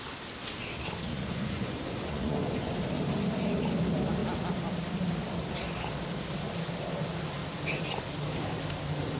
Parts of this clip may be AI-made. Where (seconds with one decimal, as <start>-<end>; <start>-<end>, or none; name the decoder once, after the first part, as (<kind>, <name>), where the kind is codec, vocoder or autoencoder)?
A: 1.1-2.7 (vocoder, Vocos)